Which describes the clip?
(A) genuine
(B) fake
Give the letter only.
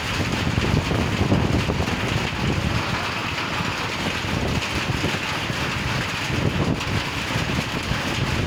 A